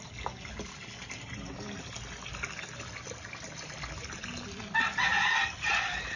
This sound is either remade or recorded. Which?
recorded